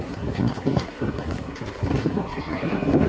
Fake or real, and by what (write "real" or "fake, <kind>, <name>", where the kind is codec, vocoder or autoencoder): fake, codec, SNAC